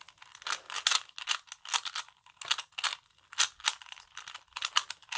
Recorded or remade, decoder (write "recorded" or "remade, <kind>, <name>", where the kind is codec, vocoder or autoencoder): recorded